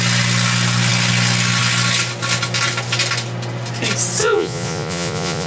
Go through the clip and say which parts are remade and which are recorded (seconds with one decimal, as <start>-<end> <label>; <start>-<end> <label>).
0.0-4.2 recorded; 4.2-5.5 remade